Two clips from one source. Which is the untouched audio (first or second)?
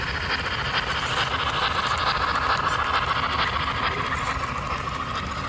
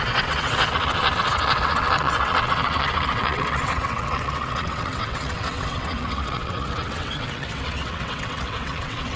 first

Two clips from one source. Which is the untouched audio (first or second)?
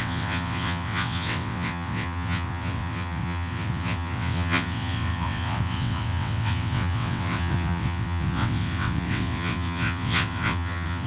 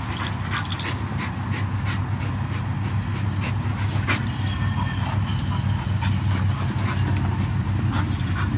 second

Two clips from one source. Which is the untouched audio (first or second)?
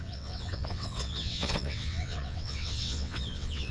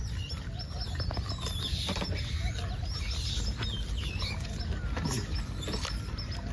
second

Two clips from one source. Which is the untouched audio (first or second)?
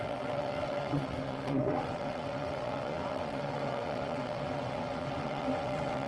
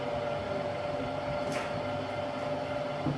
second